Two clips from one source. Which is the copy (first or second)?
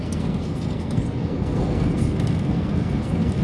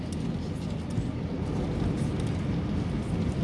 first